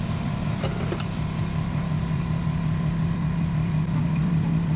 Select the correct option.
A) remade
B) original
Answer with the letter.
A